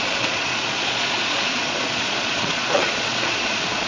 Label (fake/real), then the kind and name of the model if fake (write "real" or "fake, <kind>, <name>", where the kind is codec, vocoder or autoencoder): fake, vocoder, Vocos